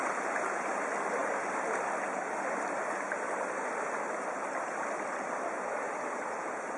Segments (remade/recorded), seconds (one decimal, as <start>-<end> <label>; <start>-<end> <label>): 0.0-6.8 remade